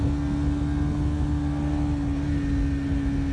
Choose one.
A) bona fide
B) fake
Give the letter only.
A